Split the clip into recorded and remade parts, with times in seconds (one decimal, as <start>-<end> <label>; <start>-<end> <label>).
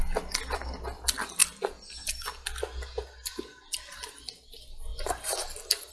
0.0-5.9 recorded